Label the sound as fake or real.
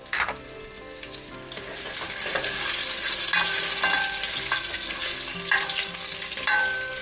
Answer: real